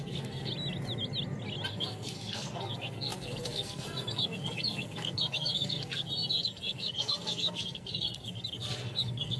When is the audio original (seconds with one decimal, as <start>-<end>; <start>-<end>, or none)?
0.5-1.7